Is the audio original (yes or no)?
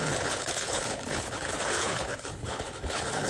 no